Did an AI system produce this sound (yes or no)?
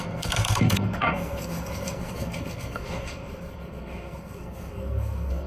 yes